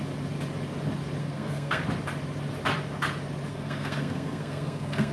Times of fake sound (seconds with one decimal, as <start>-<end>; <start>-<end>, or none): 1.2-1.8; 3.5-5.1